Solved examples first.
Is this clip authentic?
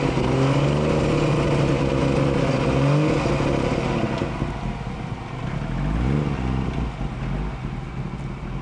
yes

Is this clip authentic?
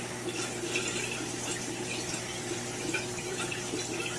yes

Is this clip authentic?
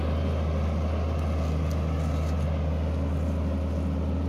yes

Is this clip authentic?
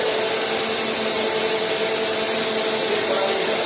yes